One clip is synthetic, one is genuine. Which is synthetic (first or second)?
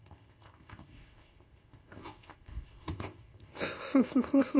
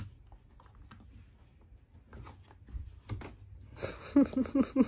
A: first